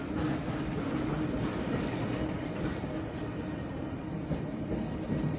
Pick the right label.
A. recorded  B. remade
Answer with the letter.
A